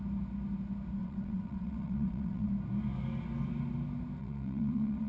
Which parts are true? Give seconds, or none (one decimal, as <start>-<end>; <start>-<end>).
0.0-1.0; 2.5-4.2